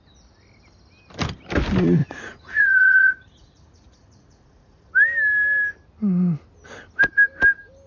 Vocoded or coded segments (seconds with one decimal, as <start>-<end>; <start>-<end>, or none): 2.0-4.9

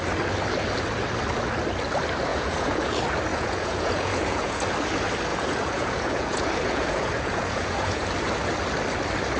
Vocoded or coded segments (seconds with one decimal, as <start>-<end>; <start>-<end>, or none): 2.3-2.9; 3.3-4.7; 5.3-8.1

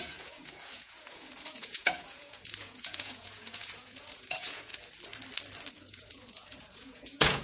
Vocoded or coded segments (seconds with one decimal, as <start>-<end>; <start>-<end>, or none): 0.0-4.7; 5.7-7.4

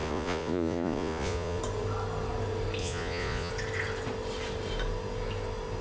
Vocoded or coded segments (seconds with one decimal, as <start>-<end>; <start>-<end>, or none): 0.0-1.6; 2.8-3.5

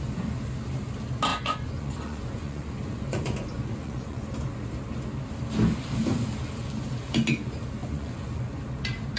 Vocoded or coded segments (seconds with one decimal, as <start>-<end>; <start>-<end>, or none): 1.3-4.3; 7.8-8.6

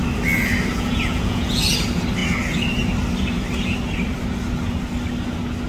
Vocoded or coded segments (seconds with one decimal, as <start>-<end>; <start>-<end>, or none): 0.7-1.7